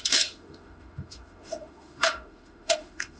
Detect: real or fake fake